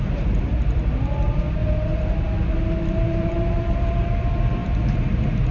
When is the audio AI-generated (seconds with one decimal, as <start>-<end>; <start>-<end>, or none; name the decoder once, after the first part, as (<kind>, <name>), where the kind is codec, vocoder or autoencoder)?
0.0-1.6 (vocoder, BigVGAN v2); 2.8-5.5